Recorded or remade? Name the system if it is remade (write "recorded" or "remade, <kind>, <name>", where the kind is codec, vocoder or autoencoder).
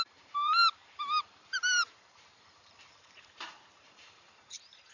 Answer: remade, vocoder, BigVGAN v2